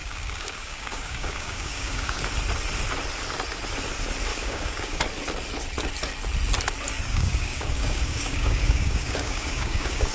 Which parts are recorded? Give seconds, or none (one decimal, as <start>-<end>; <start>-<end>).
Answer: 2.2-4.3; 5.0-7.1

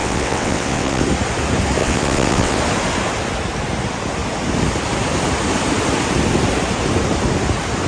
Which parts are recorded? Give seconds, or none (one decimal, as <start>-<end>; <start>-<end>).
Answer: 1.0-1.8; 2.6-7.9

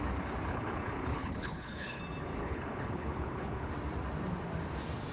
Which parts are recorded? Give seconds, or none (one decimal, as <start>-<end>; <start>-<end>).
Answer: 0.0-0.5; 2.0-2.4; 3.7-5.1

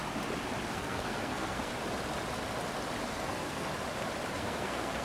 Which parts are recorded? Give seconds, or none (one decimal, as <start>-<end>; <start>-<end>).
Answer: 0.0-0.7; 1.7-3.0; 3.7-4.3

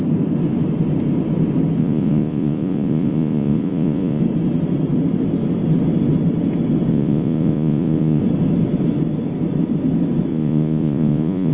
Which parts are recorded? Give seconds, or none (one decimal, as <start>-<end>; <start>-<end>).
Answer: 0.0-1.8; 4.2-6.9; 8.2-10.3

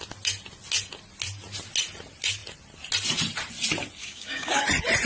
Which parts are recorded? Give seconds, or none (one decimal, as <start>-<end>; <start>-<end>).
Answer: 0.0-4.0; 4.6-5.1

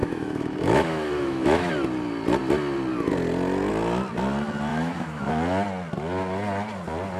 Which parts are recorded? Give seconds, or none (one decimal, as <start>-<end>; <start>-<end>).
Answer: 1.7-4.7; 5.3-7.2